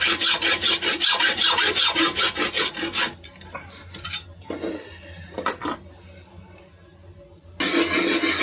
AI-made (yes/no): no